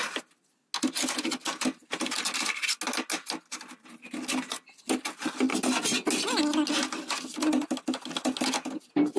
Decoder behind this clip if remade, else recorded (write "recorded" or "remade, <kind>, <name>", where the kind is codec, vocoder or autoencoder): recorded